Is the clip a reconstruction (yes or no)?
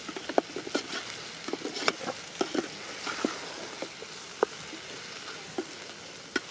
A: no